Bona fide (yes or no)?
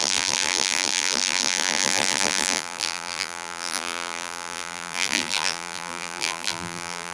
no